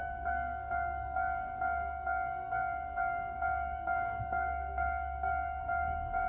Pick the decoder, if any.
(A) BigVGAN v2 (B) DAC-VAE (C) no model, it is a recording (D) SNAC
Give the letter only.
D